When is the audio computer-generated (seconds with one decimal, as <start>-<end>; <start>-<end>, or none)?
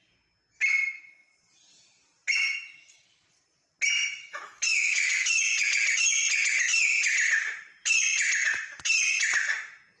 4.3-5.5